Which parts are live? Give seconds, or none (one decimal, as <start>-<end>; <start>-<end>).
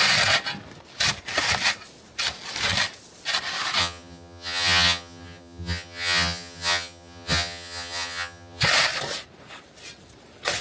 0.0-3.8; 8.6-10.6